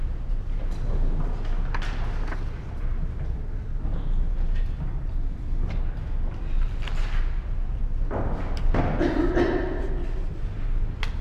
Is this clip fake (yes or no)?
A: no